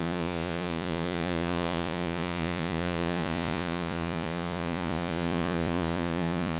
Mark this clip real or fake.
fake